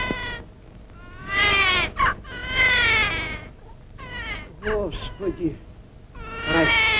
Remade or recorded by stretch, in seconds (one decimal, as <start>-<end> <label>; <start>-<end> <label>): 0.0-1.2 recorded; 1.2-1.7 remade; 1.7-7.0 recorded